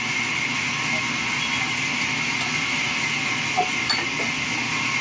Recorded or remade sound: recorded